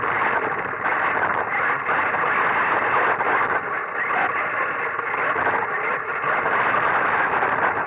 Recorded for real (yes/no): yes